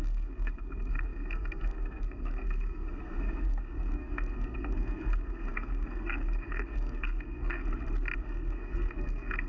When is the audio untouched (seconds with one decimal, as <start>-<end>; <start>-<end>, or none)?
7.6-8.2